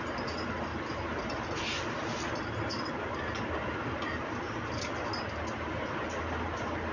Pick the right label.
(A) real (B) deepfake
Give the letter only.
A